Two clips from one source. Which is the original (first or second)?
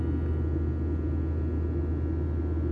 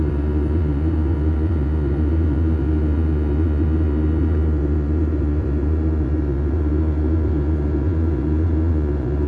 first